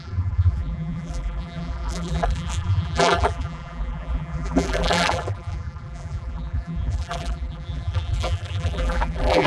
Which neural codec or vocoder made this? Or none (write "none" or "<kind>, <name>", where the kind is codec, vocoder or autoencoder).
vocoder, BigVGAN v2